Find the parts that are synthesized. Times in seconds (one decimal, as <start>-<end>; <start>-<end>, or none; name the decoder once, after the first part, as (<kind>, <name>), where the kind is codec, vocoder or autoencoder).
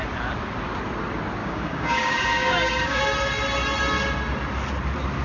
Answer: 1.4-3.0 (codec, DAC)